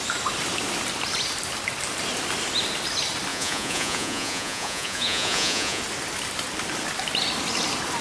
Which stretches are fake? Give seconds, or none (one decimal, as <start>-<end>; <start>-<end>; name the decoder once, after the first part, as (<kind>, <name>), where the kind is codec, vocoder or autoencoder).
3.3-5.8 (vocoder, Vocos)